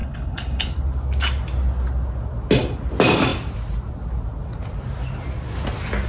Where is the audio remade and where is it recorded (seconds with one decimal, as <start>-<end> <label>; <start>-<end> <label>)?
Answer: 0.0-0.7 remade; 0.7-6.1 recorded